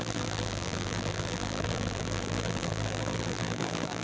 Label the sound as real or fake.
fake